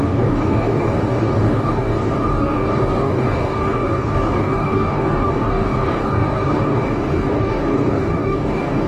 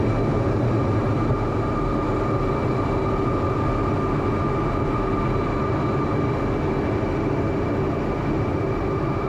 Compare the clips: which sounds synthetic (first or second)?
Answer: first